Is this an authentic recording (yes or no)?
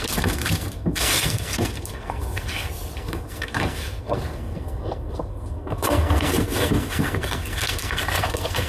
no